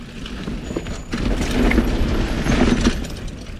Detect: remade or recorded recorded